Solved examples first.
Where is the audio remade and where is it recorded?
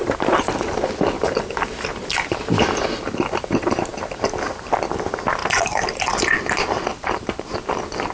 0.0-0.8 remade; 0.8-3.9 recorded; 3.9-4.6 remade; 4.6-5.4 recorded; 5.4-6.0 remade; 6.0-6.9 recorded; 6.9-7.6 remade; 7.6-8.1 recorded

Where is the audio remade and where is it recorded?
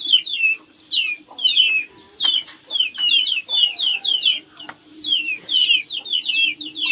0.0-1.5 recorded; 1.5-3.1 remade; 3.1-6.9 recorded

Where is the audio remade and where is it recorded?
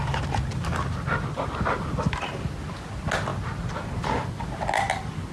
0.0-5.3 recorded